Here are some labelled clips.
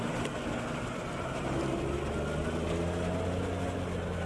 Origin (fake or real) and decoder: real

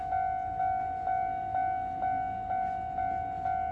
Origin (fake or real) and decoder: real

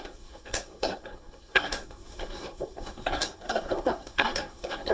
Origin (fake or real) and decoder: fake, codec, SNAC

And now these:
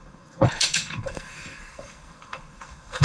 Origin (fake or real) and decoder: fake, codec, SNAC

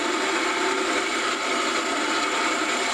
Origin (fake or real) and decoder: real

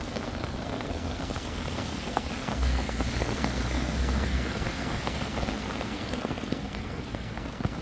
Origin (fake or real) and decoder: fake, codec, SNAC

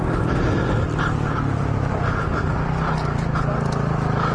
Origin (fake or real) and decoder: real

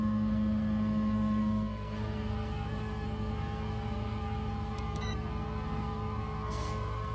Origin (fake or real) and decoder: fake, codec, SNAC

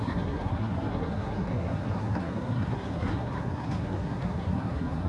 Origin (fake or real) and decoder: fake, codec, SNAC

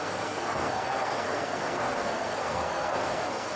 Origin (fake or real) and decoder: fake, codec, SNAC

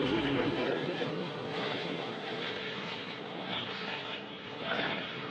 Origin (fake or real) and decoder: fake, codec, SNAC